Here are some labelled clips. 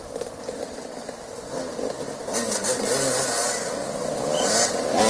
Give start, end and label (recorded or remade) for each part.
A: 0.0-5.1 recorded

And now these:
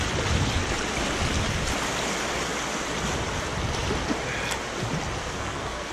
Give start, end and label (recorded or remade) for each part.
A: 0.0-5.2 recorded; 5.2-5.9 remade

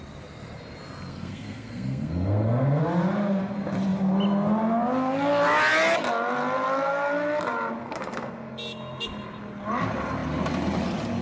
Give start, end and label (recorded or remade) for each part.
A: 0.0-1.1 recorded; 1.1-2.8 remade; 2.8-7.8 recorded; 7.8-8.5 remade; 8.5-11.2 recorded

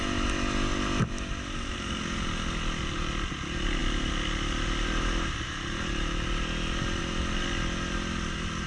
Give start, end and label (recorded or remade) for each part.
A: 0.0-8.7 recorded

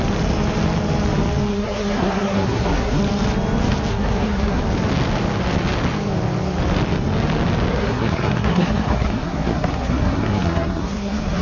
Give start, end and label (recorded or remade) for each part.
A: 0.0-1.5 recorded; 1.5-3.0 remade; 3.0-3.9 recorded; 3.9-4.6 remade; 4.6-7.7 recorded; 7.7-11.4 remade